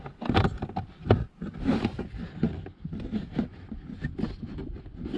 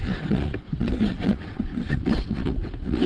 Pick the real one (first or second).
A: first